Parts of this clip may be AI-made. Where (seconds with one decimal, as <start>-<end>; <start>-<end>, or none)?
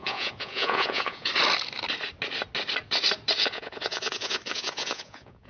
0.0-1.3; 3.4-5.5